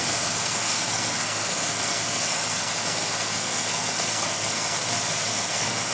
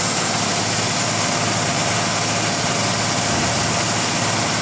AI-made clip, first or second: first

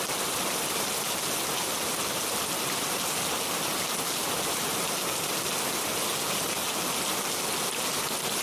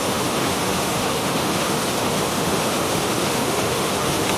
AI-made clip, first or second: second